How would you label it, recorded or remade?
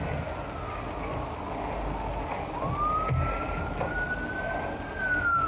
recorded